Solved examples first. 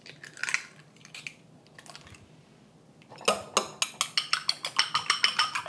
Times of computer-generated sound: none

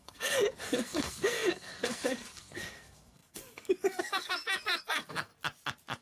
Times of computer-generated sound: 0.0-5.3

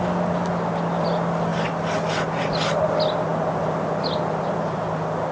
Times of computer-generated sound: none